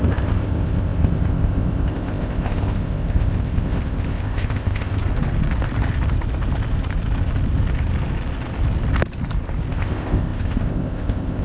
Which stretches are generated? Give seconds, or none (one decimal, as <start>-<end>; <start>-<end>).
0.0-5.0; 9.7-11.4